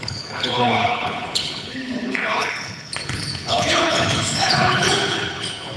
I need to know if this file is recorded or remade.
remade